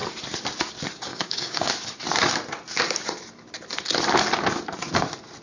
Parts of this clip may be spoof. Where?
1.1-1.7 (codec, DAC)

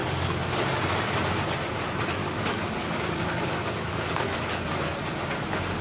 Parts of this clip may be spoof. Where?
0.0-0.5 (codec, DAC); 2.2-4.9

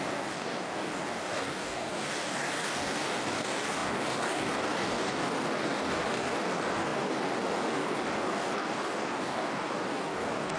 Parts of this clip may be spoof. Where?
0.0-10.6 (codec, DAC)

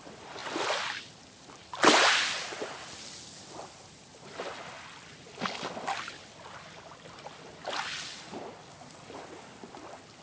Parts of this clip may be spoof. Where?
none